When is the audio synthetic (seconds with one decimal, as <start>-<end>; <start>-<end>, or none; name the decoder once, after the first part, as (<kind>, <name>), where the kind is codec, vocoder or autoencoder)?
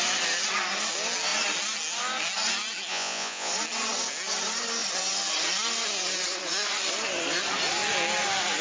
2.9-3.5 (vocoder, Vocos)